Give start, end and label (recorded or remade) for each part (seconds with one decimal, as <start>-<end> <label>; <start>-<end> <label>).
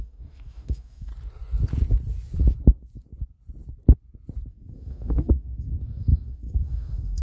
0.0-1.1 remade; 1.1-4.5 recorded; 4.5-7.2 remade